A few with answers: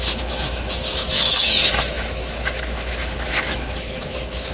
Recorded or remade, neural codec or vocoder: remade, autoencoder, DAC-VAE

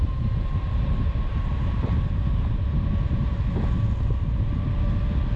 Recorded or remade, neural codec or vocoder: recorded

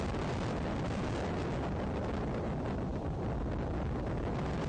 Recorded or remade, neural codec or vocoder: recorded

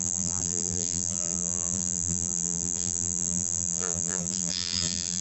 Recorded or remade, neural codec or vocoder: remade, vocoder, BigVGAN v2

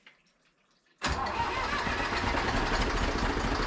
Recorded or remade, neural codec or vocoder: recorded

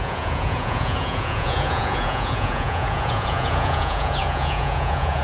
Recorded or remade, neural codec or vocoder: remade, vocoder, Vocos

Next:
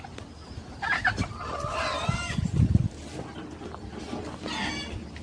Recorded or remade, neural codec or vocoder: recorded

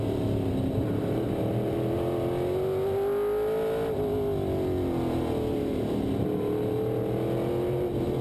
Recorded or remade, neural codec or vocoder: recorded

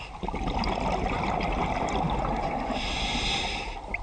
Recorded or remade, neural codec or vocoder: recorded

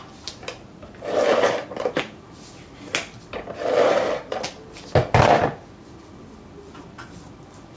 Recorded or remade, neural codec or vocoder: recorded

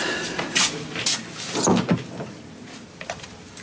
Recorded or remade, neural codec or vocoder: remade, vocoder, BigVGAN v2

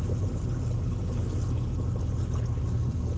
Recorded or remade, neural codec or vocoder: recorded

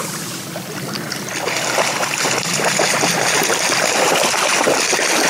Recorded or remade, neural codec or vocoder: recorded